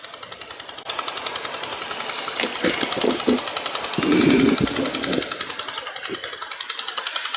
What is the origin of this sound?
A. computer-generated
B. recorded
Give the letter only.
B